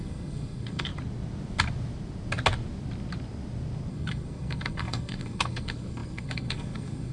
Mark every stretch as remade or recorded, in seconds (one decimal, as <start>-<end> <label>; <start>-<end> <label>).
0.0-0.9 remade; 0.9-3.9 recorded; 3.9-7.1 remade